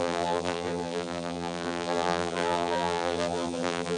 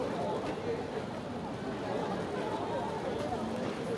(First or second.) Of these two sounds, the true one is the second